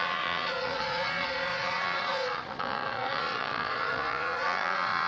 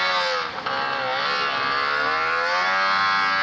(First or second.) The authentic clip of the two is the second